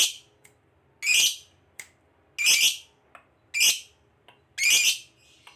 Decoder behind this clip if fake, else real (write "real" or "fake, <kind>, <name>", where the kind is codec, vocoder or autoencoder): real